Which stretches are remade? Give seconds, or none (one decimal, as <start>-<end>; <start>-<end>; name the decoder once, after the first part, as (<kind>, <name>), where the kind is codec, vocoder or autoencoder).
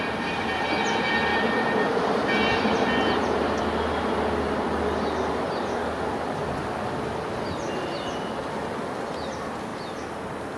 1.3-3.6 (vocoder, BigVGAN v2)